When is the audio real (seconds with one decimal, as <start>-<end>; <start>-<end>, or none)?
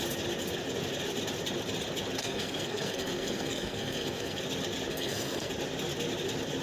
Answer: 0.0-2.2; 4.4-4.9; 5.5-6.6